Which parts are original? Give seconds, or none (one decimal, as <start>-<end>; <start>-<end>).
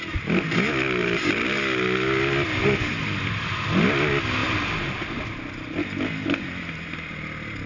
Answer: 0.0-1.0; 1.6-7.7